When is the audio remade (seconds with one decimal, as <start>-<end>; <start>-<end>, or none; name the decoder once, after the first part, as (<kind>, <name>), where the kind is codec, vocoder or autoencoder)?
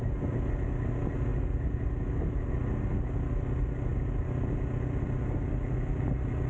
none